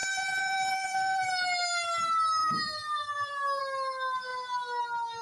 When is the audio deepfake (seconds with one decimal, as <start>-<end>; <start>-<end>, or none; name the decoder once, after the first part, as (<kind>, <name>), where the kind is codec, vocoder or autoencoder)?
0.0-1.3 (vocoder, BigVGAN v2); 2.4-3.6